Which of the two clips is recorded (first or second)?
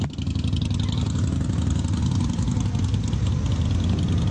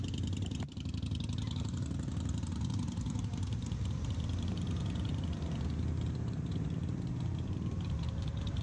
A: first